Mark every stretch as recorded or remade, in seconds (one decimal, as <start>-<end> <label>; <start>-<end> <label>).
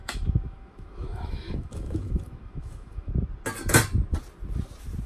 0.0-3.1 remade; 3.1-5.1 recorded